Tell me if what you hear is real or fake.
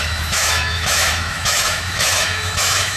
fake